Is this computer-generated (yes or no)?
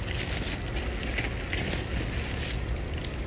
no